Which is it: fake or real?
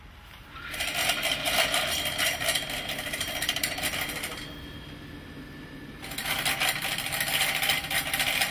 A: real